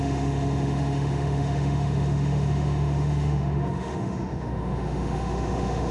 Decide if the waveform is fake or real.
fake